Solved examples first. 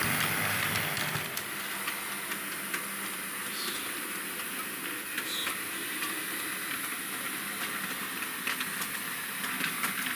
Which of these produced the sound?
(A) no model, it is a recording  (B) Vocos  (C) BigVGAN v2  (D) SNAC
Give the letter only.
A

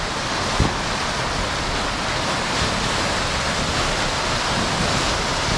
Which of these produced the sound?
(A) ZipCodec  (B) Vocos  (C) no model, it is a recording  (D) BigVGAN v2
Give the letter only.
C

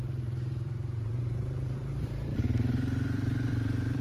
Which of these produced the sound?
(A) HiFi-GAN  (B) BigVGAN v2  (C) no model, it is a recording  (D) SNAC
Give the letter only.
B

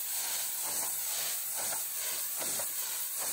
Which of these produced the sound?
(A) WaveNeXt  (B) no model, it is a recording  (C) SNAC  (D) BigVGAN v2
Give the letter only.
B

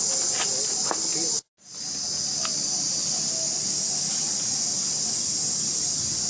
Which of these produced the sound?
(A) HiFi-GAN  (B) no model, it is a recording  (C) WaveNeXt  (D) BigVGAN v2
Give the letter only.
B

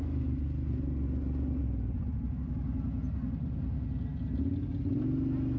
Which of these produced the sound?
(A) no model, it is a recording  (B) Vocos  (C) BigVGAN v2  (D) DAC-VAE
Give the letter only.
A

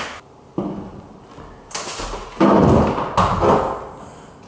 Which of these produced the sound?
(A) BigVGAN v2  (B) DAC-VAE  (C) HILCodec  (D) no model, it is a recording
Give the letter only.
D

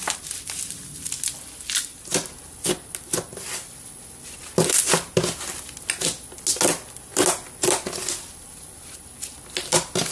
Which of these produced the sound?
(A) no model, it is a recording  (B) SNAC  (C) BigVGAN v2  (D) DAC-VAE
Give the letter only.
A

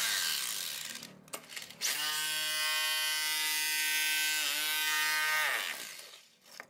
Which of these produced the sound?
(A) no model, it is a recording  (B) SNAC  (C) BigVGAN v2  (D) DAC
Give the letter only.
A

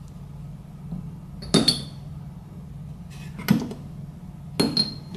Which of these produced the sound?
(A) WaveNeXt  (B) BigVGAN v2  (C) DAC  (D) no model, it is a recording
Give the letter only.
D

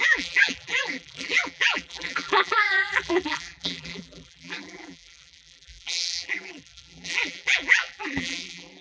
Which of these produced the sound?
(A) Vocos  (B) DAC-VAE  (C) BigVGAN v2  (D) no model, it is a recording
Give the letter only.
C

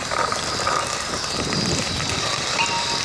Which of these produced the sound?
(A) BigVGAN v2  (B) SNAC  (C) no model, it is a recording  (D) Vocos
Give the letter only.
A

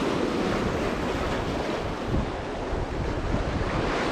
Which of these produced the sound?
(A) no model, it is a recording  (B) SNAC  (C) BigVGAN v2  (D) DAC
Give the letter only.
A